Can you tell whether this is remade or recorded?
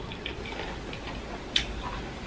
recorded